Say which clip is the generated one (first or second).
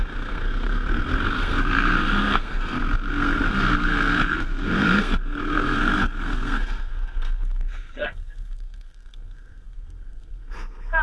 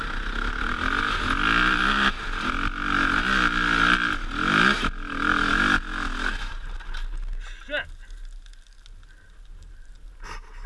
first